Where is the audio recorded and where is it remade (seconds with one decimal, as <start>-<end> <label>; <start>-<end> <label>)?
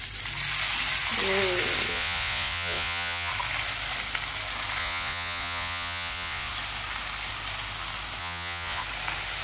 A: 0.0-1.9 recorded; 1.9-3.3 remade; 3.3-4.8 recorded; 4.8-6.5 remade; 6.5-8.2 recorded; 8.2-8.8 remade; 8.8-9.4 recorded